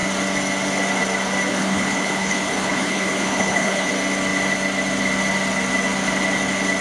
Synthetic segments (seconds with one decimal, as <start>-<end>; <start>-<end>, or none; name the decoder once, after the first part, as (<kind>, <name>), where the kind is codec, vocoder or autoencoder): 1.5-3.9 (codec, HILCodec)

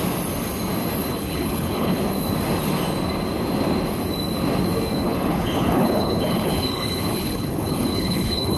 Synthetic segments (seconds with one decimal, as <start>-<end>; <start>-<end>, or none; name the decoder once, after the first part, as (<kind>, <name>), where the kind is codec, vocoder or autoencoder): 1.1-2.0 (codec, HILCodec); 5.0-8.6

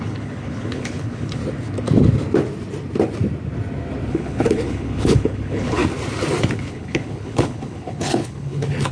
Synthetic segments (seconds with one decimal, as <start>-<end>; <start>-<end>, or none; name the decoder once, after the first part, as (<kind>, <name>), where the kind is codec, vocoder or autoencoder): 0.0-1.4 (codec, HILCodec); 4.1-5.8; 6.4-8.9

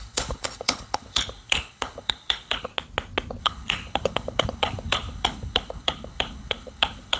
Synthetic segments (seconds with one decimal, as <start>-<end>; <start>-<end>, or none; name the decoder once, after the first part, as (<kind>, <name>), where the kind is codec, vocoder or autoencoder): 0.0-2.7 (codec, HILCodec); 3.4-7.2

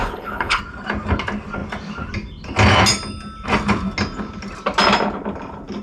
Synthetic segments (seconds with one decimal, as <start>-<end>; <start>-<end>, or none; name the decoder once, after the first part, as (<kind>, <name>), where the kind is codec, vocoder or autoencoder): 0.0-0.6 (codec, HILCodec)